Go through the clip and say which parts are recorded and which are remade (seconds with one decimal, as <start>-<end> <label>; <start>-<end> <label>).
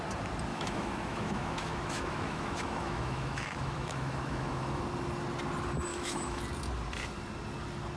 0.0-0.5 recorded; 0.5-4.8 remade; 4.8-5.9 recorded; 5.9-6.4 remade; 6.4-8.0 recorded